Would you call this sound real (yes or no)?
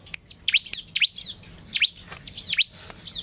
yes